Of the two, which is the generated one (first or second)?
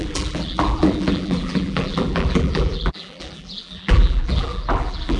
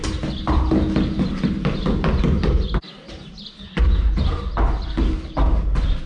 first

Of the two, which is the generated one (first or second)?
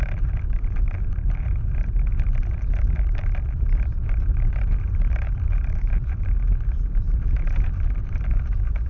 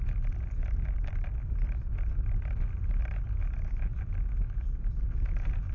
first